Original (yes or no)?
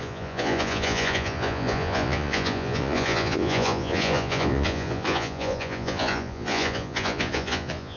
no